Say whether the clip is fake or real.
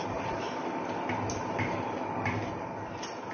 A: real